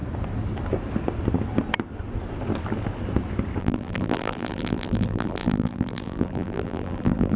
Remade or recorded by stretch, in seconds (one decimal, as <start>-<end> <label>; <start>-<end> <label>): 0.0-3.6 recorded; 3.6-7.4 remade